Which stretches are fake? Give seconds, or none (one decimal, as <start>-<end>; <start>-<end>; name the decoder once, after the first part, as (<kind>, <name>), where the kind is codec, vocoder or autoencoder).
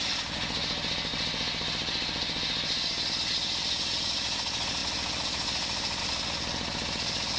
none